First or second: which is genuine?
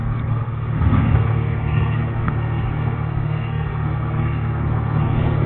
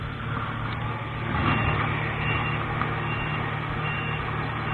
second